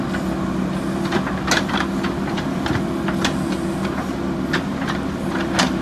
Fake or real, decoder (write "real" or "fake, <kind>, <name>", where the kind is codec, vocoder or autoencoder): real